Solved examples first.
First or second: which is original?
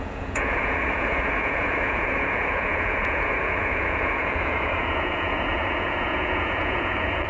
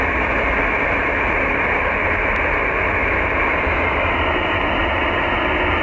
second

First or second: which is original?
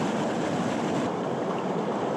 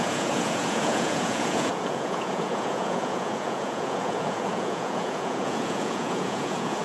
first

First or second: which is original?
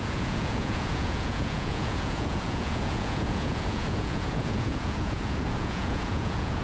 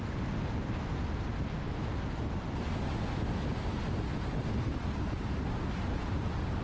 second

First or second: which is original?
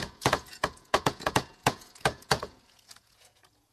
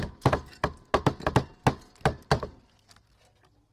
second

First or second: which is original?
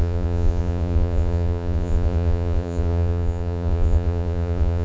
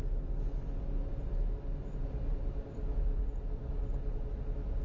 second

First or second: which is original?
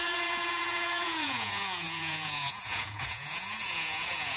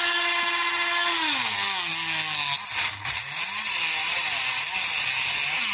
second